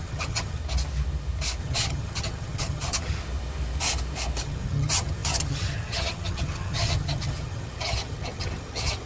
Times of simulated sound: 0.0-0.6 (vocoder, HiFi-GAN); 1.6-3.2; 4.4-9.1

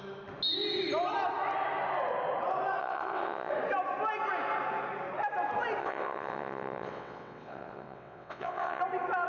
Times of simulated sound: 2.8-3.5 (vocoder, WaveNeXt); 5.8-8.8

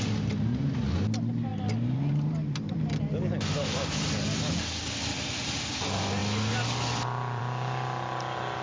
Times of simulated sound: none

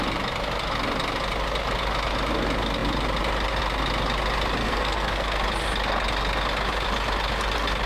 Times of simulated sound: 4.6-5.4 (codec, SNAC)

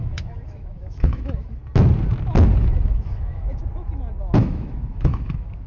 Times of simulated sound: 0.0-1.6 (autoencoder, DAC-VAE); 2.6-3.6; 4.2-5.7

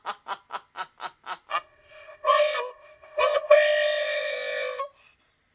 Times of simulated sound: 1.5-4.8 (codec, ZipCodec)